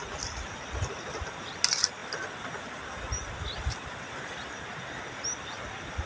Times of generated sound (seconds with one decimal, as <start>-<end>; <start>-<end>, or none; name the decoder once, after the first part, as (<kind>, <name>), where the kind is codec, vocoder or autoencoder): 2.0-4.5 (vocoder, BigVGAN v2)

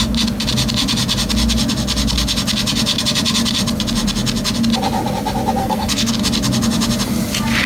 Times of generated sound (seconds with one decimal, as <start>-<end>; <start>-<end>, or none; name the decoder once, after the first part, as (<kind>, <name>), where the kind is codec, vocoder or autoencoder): 5.6-6.1 (codec, SNAC)

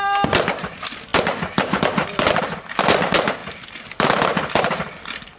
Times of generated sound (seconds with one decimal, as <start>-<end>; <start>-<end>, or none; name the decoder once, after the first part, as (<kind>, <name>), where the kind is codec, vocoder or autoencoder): none

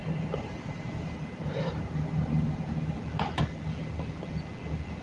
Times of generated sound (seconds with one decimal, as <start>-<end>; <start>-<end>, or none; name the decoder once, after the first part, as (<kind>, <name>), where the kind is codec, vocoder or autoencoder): 0.0-3.0 (vocoder, BigVGAN v2)

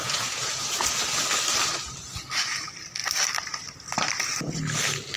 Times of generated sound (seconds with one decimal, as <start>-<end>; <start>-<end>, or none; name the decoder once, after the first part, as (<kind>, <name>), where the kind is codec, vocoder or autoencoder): 0.0-0.9 (vocoder, Vocos)

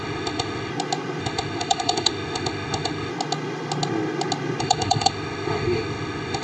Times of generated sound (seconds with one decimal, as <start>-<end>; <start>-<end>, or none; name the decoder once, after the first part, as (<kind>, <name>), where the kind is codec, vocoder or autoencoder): 0.0-0.7 (autoencoder, DAC-VAE); 1.2-3.1; 4.6-6.4

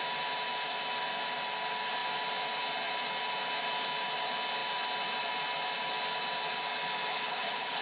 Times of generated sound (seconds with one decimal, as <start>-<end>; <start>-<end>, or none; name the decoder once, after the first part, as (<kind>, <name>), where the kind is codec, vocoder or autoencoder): 7.1-7.8 (codec, HILCodec)